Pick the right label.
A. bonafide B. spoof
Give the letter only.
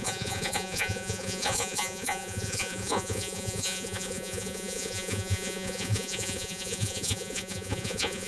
B